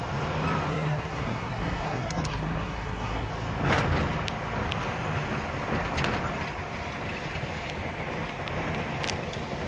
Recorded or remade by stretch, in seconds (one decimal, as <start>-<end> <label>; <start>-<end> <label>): 0.0-0.7 recorded; 0.7-3.3 remade; 3.3-9.7 recorded